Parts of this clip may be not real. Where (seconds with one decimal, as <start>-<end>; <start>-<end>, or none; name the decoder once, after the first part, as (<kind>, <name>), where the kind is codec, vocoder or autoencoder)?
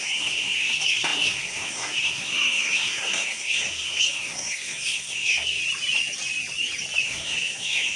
0.0-5.6 (codec, SNAC); 7.0-8.0